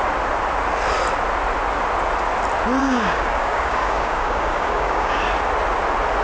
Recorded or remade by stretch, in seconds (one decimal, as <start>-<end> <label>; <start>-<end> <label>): 0.0-2.8 recorded; 2.8-5.2 remade; 5.2-6.2 recorded